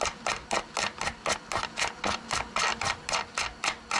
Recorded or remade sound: recorded